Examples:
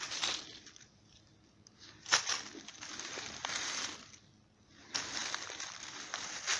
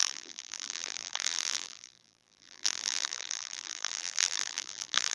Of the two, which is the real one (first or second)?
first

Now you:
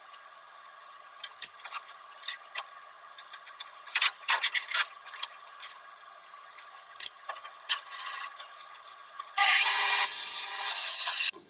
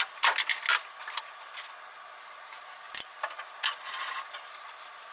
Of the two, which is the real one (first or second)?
second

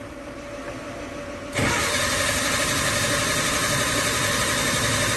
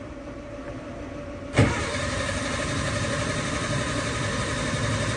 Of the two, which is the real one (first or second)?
first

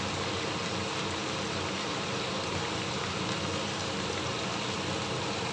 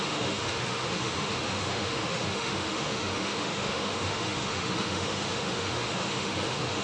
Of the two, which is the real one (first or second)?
first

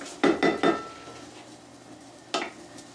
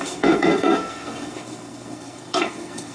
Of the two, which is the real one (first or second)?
first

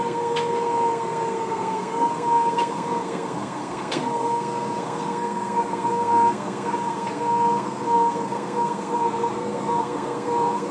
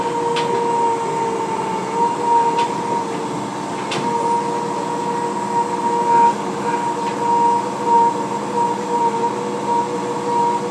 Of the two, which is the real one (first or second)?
second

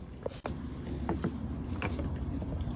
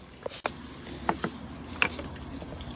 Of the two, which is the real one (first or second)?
second